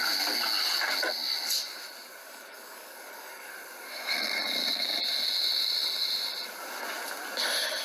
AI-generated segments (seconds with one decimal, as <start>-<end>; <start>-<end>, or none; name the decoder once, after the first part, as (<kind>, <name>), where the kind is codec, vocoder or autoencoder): 2.2-3.5 (codec, DAC)